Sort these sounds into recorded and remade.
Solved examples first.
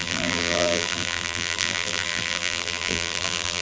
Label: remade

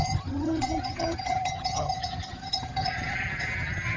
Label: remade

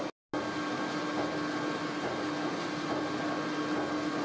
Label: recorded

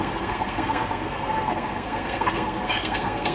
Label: remade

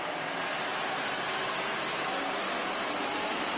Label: recorded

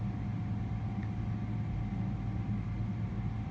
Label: recorded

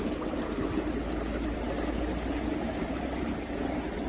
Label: recorded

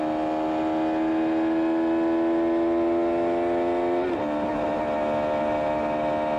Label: recorded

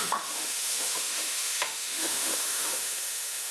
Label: remade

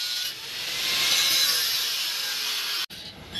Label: recorded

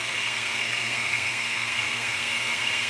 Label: remade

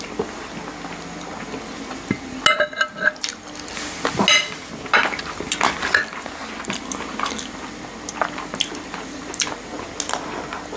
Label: recorded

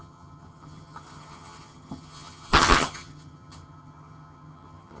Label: remade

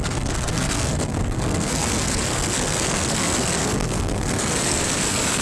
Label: remade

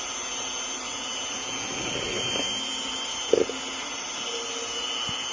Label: recorded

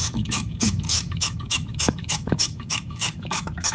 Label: remade